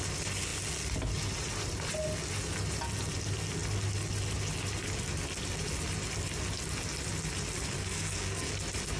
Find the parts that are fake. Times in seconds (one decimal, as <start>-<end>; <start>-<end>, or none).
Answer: 7.8-8.5